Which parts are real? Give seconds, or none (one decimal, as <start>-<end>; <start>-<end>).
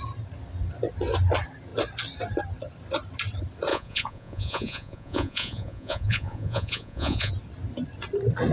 0.0-3.7; 7.3-8.5